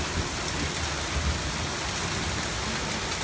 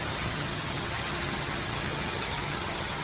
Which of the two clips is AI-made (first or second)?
second